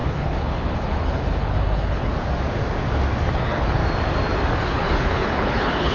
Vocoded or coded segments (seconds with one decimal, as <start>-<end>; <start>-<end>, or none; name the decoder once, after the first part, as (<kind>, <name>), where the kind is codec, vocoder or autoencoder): 0.0-2.1 (codec, HILCodec); 3.3-3.8; 4.6-5.9